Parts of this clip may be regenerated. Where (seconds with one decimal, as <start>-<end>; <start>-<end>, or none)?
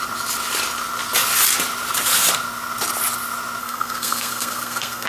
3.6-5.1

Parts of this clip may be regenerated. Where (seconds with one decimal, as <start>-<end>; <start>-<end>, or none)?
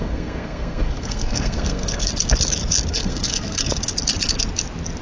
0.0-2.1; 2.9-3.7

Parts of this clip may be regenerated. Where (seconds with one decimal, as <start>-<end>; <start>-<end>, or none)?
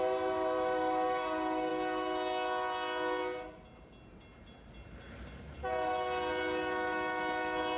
none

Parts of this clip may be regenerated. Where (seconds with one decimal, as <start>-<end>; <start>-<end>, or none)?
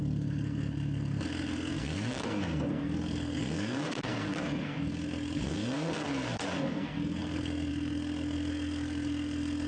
0.0-9.7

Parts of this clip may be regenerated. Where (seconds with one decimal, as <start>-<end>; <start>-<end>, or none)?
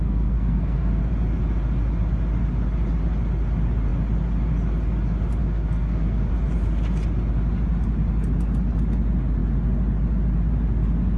0.0-1.1; 5.4-6.3